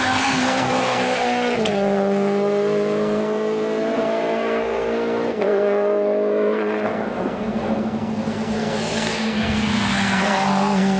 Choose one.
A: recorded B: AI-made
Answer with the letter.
B